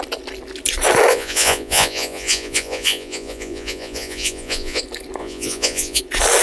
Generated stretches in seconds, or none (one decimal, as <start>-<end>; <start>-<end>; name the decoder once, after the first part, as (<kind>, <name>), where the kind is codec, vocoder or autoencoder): 1.1-4.8 (vocoder, Vocos); 5.2-6.0